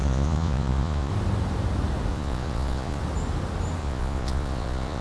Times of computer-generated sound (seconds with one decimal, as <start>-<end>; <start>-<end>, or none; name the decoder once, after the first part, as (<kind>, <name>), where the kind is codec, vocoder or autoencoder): 0.0-1.1 (vocoder, Vocos); 2.1-3.0; 3.8-5.0